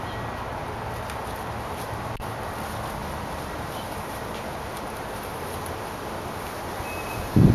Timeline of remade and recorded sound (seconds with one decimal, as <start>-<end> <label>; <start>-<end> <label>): 0.0-3.0 recorded; 3.0-4.8 remade; 4.8-7.5 recorded